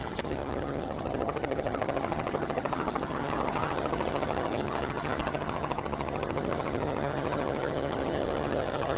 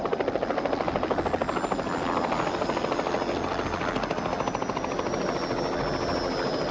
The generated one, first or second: first